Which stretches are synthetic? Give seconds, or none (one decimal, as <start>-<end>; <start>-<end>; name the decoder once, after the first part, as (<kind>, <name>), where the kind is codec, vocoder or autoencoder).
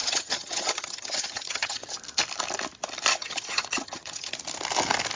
0.0-2.0 (vocoder, HiFi-GAN); 3.1-4.3